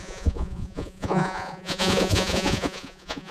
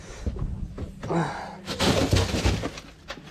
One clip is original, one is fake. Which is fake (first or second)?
first